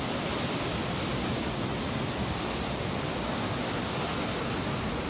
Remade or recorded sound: recorded